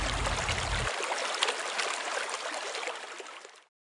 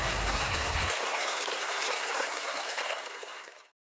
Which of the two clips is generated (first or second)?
second